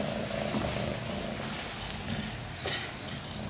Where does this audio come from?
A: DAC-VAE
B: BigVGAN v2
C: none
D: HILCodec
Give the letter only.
C